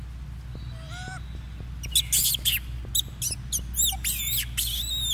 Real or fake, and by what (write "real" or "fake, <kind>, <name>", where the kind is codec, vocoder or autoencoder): real